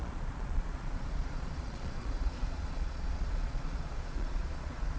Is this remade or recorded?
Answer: remade